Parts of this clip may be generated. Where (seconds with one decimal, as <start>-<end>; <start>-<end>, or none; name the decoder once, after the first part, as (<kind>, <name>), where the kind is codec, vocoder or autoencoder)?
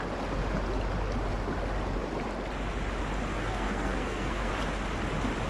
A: 3.3-4.5 (codec, SNAC)